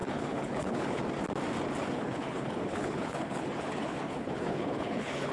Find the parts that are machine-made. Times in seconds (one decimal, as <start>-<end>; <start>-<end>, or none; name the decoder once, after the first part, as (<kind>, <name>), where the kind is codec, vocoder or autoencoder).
0.0-1.0 (codec, HILCodec); 1.8-5.3